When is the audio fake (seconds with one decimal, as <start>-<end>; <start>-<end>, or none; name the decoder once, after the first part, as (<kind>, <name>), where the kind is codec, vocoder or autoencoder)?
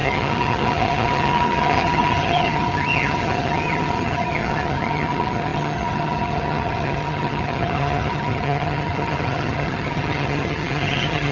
0.0-11.3 (vocoder, HiFi-GAN)